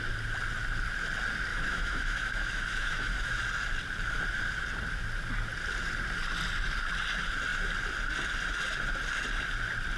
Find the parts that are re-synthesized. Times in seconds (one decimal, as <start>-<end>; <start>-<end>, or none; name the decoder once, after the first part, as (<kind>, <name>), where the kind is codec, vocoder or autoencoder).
1.5-3.4 (autoencoder, DAC-VAE)